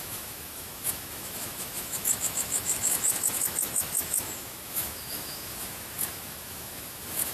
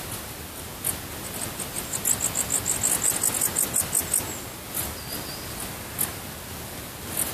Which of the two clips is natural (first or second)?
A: second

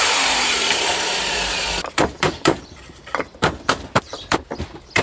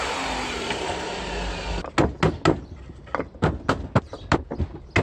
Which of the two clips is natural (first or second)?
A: second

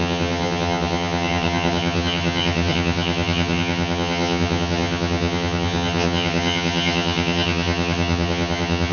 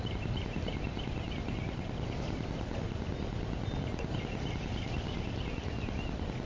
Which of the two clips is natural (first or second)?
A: second